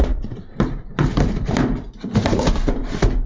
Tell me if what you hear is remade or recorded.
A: recorded